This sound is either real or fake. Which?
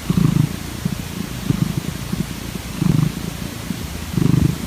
real